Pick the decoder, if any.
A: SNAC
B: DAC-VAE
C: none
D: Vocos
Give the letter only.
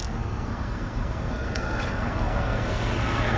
A